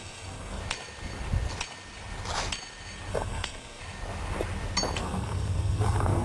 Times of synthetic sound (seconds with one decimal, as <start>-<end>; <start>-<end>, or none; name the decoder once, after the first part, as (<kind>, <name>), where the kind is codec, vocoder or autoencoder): 0.0-0.6 (codec, SNAC); 3.1-3.8; 5.0-6.2